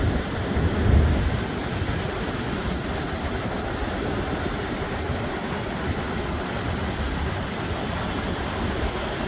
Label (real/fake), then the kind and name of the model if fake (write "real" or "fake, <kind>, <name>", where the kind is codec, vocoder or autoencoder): real